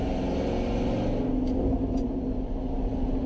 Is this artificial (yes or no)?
no